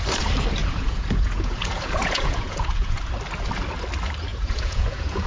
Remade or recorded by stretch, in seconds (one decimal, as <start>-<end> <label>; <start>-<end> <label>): 0.0-0.6 recorded; 0.6-3.0 remade; 3.0-4.3 recorded; 4.3-5.3 remade

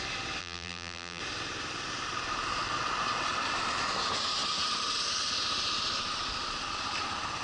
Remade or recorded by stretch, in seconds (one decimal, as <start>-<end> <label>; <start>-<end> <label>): 0.0-0.4 recorded; 0.4-1.2 remade; 1.2-7.4 recorded

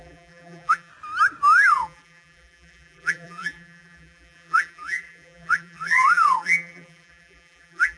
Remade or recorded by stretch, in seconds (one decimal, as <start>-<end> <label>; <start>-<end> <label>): 0.0-0.9 remade; 0.9-1.7 recorded; 1.7-8.0 remade

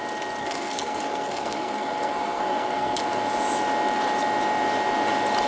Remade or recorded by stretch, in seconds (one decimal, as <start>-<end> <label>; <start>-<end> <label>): 0.0-0.4 recorded; 0.4-3.0 remade; 3.0-5.5 recorded

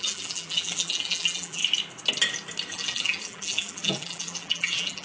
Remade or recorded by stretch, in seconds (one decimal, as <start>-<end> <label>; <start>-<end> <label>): 0.0-1.6 remade; 1.6-2.7 recorded; 2.7-5.0 remade

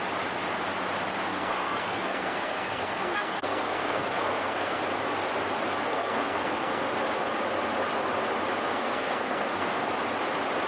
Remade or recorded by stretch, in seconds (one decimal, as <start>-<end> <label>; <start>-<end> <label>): 0.0-1.3 recorded; 1.3-4.8 remade; 4.8-5.9 recorded; 5.9-6.8 remade; 6.8-8.7 recorded; 8.7-9.9 remade; 9.9-10.7 recorded

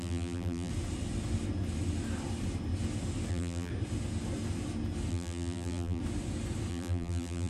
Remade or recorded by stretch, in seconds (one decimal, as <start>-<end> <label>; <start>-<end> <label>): 0.0-0.7 remade; 0.7-3.3 recorded; 3.3-3.7 remade; 3.7-5.1 recorded; 5.1-6.0 remade; 6.0-6.7 recorded; 6.7-7.5 remade